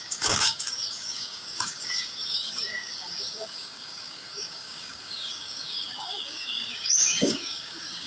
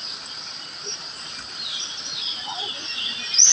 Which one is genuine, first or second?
second